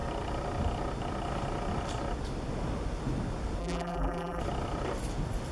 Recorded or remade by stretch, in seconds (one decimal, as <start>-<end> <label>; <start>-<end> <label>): 0.0-3.6 recorded; 3.6-4.4 remade; 4.4-5.5 recorded